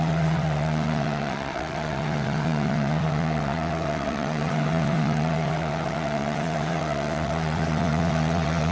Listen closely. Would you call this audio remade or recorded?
remade